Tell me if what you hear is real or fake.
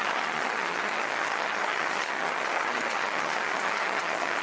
fake